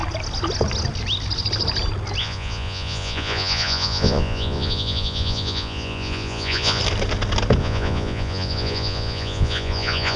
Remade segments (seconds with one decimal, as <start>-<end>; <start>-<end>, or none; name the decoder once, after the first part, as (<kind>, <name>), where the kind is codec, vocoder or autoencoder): 2.2-6.8 (vocoder, Vocos); 7.6-10.2